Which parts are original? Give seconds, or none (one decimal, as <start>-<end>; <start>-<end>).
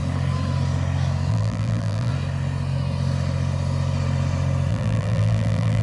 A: 0.0-1.3; 2.1-4.7